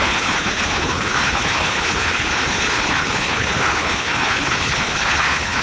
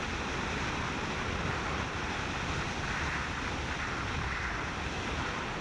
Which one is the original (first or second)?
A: second